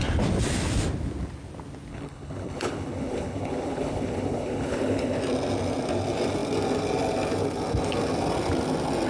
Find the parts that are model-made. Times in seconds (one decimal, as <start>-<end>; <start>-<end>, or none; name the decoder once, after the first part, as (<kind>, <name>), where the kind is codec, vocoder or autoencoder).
1.9-5.2 (codec, HILCodec)